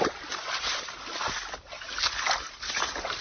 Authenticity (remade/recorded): recorded